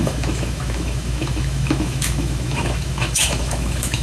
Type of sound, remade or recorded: remade